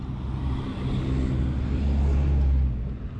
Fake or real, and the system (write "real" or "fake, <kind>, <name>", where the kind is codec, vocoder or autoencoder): real